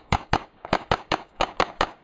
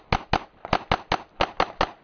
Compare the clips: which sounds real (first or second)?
second